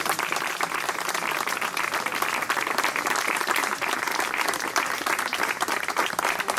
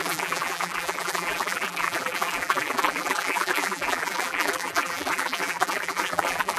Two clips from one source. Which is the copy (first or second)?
second